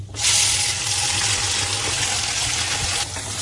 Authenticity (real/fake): real